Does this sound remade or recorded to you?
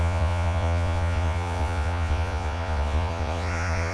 remade